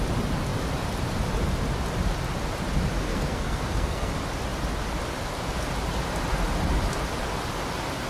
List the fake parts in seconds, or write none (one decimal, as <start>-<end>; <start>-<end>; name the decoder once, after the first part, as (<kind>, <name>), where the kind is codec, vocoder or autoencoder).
3.1-4.1 (codec, SNAC)